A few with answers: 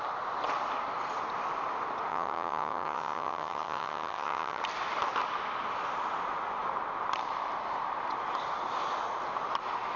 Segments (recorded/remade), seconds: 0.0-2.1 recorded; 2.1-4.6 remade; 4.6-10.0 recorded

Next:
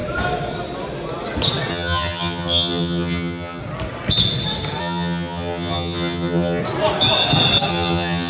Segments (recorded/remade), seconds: 0.0-1.7 recorded; 1.7-3.6 remade; 3.6-4.8 recorded; 4.8-6.6 remade; 6.6-7.7 recorded; 7.7-8.3 remade

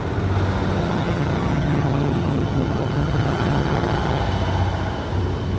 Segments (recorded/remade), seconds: 0.0-0.8 recorded; 0.8-4.2 remade; 4.2-5.6 recorded

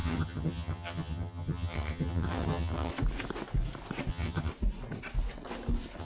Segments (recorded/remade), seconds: 0.0-2.9 remade; 2.9-4.1 recorded; 4.1-4.5 remade; 4.5-6.0 recorded

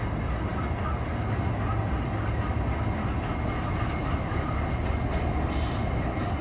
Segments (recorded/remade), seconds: 0.0-6.4 recorded

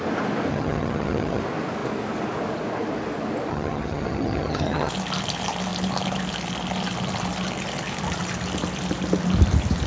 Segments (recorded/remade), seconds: 0.0-0.5 recorded; 0.5-1.4 remade; 1.4-3.5 recorded; 3.5-4.9 remade; 4.9-9.9 recorded

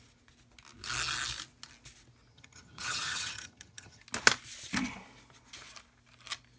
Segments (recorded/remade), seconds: 0.0-2.3 recorded; 2.3-4.0 remade; 4.0-6.6 recorded